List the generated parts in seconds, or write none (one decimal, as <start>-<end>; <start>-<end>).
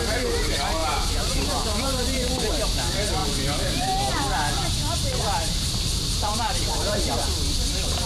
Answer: 0.8-2.5; 3.2-4.1; 4.6-7.2